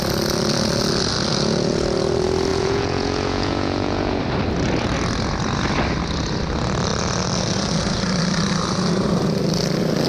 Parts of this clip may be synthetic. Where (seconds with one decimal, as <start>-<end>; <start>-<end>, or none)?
2.5-4.2

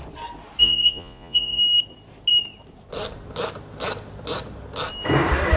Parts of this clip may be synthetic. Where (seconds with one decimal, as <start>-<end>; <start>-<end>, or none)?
0.6-1.6

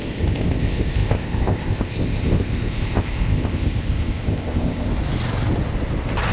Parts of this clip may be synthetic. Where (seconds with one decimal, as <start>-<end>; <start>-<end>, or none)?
0.0-4.9

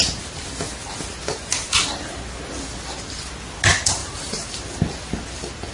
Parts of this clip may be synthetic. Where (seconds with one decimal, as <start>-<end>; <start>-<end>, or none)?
4.0-4.6

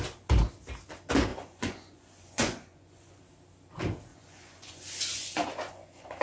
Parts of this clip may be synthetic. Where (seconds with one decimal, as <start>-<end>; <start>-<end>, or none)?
1.3-3.2; 4.1-6.2

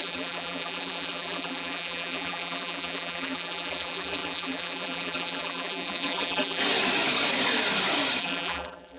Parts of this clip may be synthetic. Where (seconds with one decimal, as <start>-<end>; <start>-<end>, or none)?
0.0-6.6; 8.2-9.0

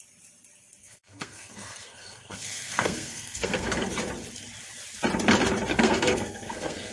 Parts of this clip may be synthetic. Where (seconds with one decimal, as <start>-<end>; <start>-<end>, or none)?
0.8-3.9; 5.7-6.9

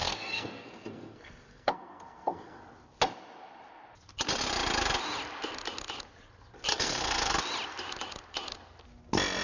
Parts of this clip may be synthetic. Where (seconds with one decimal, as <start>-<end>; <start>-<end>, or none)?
0.0-2.6; 6.7-7.4